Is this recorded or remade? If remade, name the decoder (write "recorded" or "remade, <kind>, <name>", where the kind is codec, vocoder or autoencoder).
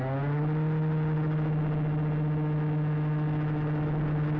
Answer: recorded